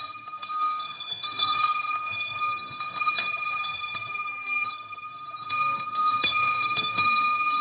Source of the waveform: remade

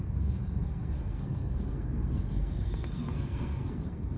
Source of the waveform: remade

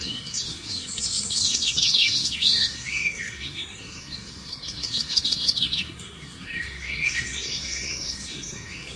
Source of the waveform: remade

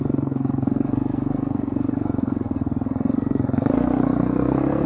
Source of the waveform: remade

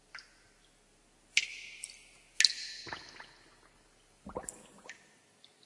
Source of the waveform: recorded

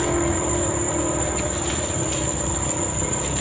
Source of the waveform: recorded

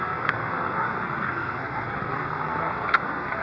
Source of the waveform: remade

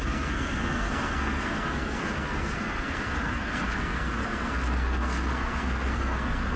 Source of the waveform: remade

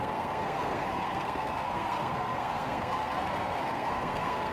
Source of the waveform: remade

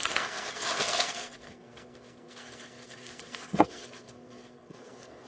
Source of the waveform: remade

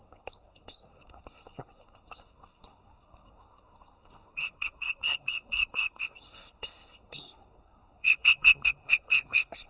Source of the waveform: remade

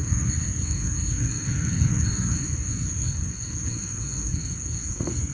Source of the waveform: remade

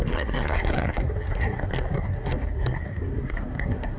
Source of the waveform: remade